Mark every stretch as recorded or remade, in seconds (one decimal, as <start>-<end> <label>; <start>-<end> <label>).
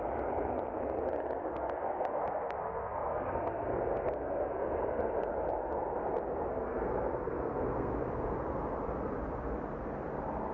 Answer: 0.0-1.5 recorded; 1.5-4.7 remade; 4.7-6.5 recorded; 6.5-7.9 remade; 7.9-10.5 recorded